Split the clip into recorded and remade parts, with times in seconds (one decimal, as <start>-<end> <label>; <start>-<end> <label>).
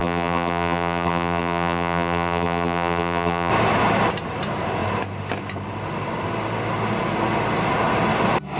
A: 0.0-3.5 remade; 3.5-8.6 recorded